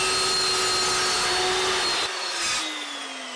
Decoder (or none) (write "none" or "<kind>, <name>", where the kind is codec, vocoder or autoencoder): none